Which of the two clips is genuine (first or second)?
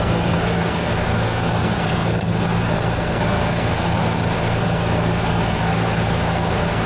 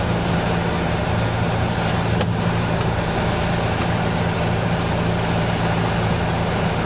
second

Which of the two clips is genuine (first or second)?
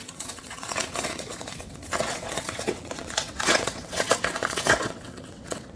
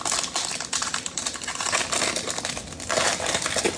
second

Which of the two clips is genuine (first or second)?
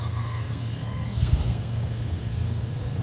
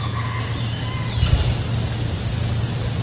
second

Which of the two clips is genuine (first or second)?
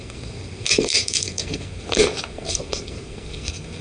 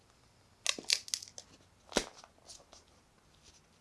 second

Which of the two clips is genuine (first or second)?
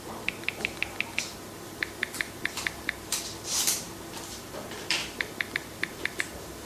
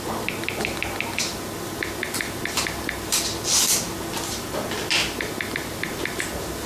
second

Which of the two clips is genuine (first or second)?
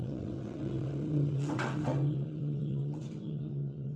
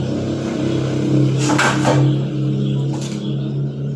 second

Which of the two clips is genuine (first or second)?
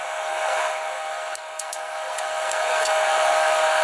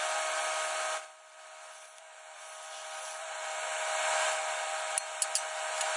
second